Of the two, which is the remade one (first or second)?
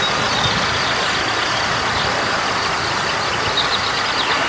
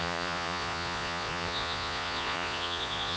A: second